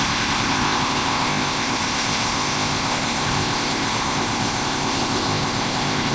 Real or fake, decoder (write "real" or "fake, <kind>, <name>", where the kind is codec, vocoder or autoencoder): fake, codec, ZipCodec